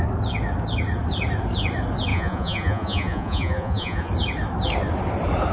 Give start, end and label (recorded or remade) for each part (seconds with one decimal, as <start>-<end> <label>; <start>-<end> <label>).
0.0-2.1 recorded; 2.1-4.1 remade; 4.1-5.5 recorded